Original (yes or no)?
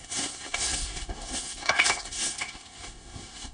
no